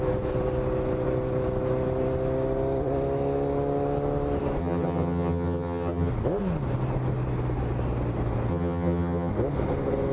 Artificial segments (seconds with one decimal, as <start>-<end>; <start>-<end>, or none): 4.6-6.1; 8.5-9.3